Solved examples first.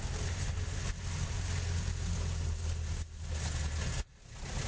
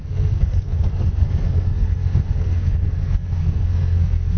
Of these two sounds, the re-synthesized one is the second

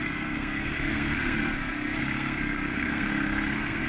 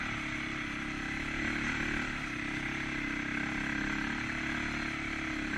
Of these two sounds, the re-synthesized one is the first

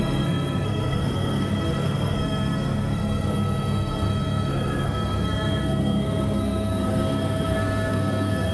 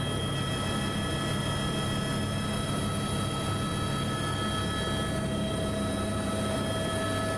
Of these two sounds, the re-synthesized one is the first